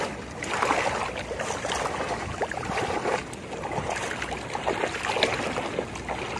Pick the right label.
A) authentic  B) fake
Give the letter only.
A